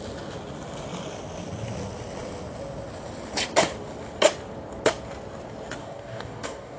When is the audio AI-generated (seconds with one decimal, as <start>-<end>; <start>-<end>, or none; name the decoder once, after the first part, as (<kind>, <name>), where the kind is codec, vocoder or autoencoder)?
5.8-6.8 (codec, DAC)